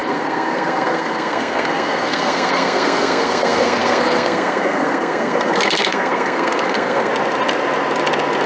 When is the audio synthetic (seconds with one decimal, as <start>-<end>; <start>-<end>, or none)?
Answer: 0.0-7.1

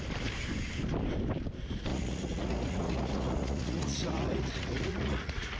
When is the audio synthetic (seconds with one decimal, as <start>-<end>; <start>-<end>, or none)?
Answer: 1.9-5.6